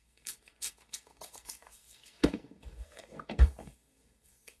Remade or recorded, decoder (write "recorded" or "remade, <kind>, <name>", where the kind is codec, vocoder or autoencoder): remade, codec, SNAC